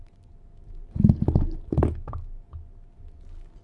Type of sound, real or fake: real